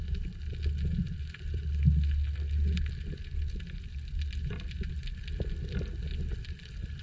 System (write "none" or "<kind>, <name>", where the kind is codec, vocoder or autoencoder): none